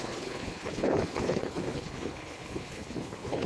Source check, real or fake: fake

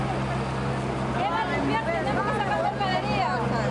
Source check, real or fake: real